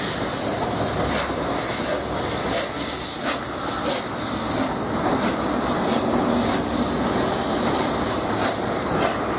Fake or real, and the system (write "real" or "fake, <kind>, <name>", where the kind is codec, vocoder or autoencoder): real